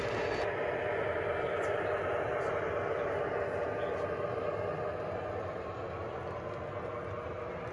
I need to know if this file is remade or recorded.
recorded